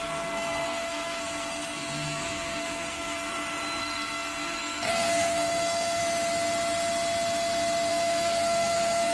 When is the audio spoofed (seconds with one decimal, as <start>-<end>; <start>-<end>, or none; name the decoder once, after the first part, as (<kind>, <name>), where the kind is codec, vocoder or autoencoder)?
0.0-3.3 (codec, SNAC); 3.8-6.0; 7.9-9.1